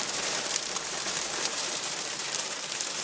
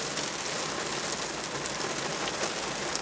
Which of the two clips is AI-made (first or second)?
first